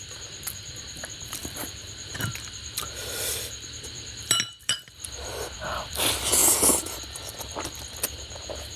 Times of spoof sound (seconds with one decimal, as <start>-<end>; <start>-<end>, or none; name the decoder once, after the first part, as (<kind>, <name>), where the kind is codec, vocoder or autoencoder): 1.4-5.4 (vocoder, BigVGAN v2); 6.4-7.8

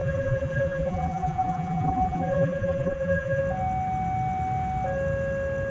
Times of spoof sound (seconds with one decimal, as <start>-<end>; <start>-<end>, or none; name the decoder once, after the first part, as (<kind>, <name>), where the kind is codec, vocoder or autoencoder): 0.0-3.4 (vocoder, BigVGAN v2)

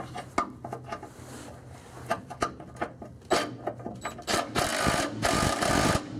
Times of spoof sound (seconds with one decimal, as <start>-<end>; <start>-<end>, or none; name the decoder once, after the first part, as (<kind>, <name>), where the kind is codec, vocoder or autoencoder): 2.1-2.8 (vocoder, BigVGAN v2); 4.7-5.7

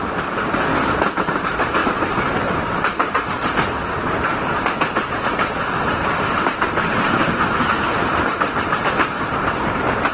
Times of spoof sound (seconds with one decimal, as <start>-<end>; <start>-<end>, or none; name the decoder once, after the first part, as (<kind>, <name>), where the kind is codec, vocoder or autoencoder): 0.0-0.7 (vocoder, BigVGAN v2); 1.2-10.1

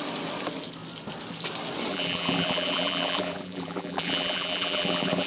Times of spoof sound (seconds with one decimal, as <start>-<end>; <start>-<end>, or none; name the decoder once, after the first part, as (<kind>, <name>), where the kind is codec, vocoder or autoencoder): 1.9-5.3 (vocoder, BigVGAN v2)